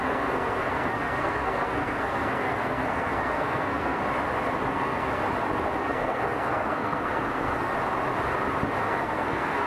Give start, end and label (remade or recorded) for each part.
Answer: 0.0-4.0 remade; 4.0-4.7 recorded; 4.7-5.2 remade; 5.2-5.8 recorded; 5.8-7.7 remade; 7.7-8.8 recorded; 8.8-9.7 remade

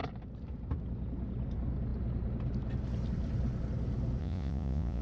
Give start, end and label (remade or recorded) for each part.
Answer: 0.0-4.2 recorded; 4.2-5.0 remade

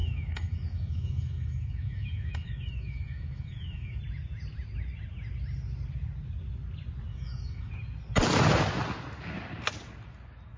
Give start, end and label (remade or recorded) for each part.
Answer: 0.0-4.0 remade; 4.0-7.1 recorded; 7.1-7.7 remade; 7.7-10.6 recorded

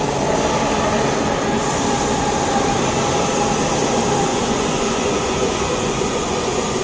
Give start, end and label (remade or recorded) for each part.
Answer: 0.0-4.3 recorded; 4.3-6.8 remade

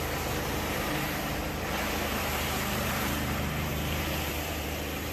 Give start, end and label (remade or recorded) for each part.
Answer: 0.0-5.1 remade

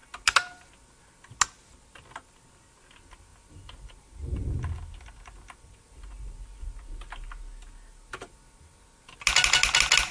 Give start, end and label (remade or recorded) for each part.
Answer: 0.0-10.1 recorded

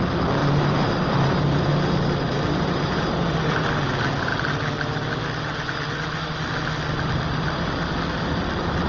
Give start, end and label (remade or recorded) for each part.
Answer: 0.0-0.4 recorded; 0.4-2.9 remade; 2.9-8.9 recorded

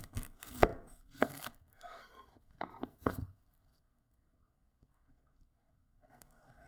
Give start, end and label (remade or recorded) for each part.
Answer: 0.0-6.7 remade